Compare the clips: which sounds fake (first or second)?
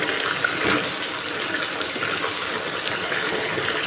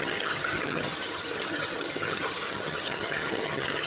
second